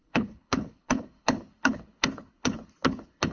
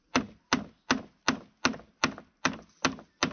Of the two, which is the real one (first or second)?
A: second